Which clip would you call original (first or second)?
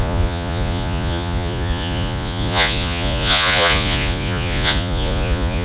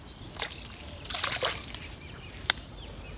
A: second